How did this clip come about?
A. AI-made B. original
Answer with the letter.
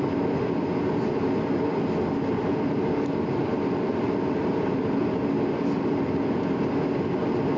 B